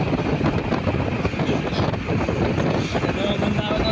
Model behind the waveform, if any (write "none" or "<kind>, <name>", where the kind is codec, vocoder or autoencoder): none